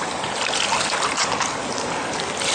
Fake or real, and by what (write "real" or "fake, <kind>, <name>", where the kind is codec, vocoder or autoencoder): real